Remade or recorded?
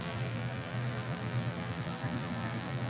remade